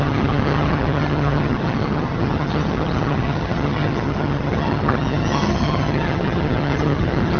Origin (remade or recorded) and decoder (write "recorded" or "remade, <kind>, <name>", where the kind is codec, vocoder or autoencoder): remade, vocoder, HiFi-GAN